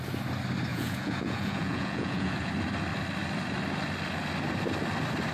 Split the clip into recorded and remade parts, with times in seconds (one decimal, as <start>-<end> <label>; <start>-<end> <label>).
0.0-0.7 recorded; 0.7-2.5 remade; 2.5-5.3 recorded